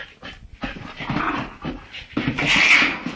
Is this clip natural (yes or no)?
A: yes